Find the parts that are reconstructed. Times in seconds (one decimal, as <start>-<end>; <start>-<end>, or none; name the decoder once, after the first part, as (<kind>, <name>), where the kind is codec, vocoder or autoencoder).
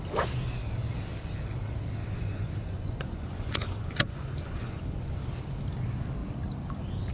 2.0-5.1 (vocoder, Vocos)